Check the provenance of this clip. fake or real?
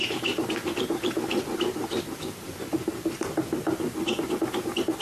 real